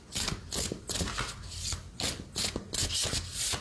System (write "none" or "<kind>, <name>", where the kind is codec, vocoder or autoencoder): none